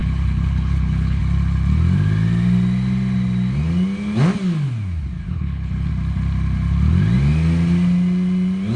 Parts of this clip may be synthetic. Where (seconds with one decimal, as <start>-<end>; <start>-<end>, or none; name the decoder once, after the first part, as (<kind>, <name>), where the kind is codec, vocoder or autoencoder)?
0.0-1.2 (codec, HILCodec); 5.3-5.9